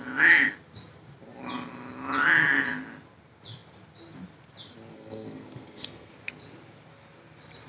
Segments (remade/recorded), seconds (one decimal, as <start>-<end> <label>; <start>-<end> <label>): 0.0-4.9 recorded; 4.9-6.1 remade; 6.1-7.7 recorded